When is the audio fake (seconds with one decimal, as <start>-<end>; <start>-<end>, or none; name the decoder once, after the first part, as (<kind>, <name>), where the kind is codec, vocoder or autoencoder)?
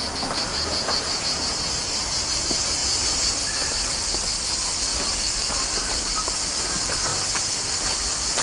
0.5-1.5 (vocoder, Vocos); 2.8-3.3